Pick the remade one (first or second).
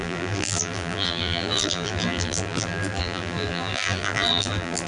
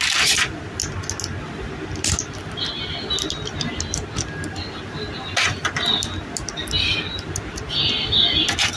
first